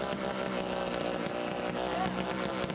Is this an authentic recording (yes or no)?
yes